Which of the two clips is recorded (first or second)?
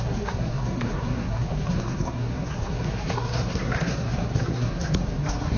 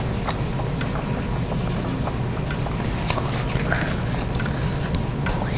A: second